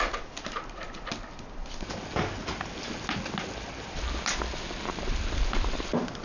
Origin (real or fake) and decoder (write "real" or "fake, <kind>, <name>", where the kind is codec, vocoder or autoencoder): real